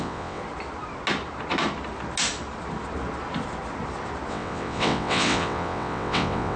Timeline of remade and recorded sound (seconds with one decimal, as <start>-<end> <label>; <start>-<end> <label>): 0.0-0.4 remade; 0.4-4.3 recorded; 4.3-6.6 remade